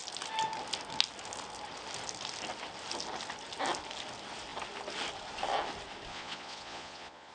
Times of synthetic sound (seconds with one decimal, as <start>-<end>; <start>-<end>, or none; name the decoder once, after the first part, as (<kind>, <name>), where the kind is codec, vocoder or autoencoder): 6.1-7.3 (vocoder, Vocos)